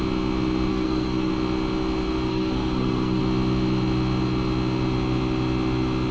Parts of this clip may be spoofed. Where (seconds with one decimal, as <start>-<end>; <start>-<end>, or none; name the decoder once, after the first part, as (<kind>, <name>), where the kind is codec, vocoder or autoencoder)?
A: 0.7-1.3 (codec, SNAC); 2.3-3.2

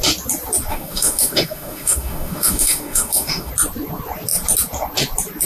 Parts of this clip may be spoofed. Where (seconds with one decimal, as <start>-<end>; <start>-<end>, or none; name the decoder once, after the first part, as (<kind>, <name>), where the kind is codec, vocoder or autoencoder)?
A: 0.7-3.5 (autoencoder, DAC-VAE)

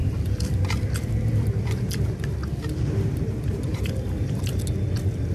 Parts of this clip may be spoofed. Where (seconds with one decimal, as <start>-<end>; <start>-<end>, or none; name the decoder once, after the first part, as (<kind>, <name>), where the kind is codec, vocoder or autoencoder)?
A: 0.0-0.9 (vocoder, BigVGAN v2); 3.7-4.6

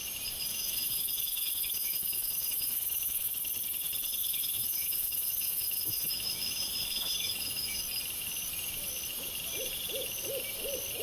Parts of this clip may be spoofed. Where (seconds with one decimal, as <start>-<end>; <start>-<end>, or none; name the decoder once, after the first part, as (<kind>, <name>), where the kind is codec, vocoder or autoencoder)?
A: 0.5-3.3 (autoencoder, DAC-VAE); 4.2-7.8

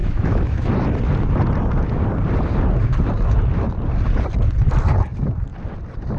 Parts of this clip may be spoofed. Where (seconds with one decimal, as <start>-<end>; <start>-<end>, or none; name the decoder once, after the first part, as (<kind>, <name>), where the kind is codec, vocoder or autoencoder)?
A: 0.0-0.7 (autoencoder, DAC-VAE)

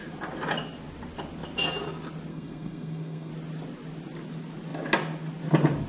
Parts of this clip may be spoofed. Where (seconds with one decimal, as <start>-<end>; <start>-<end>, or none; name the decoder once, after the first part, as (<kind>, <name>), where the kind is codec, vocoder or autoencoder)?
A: 2.3-3.3 (codec, SNAC)